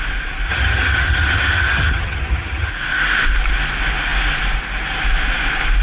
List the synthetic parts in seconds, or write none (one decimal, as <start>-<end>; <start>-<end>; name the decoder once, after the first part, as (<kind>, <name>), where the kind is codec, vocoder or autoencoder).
0.5-2.7 (vocoder, HiFi-GAN)